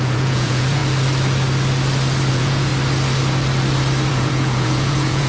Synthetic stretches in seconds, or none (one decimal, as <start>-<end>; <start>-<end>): 0.0-0.8; 2.3-2.7; 4.1-5.3